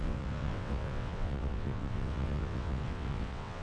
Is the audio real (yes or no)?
no